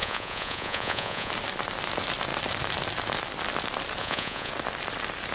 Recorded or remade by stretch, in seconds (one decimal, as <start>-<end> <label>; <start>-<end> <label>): 0.0-1.3 remade; 1.3-4.0 recorded; 4.0-4.5 remade; 4.5-5.3 recorded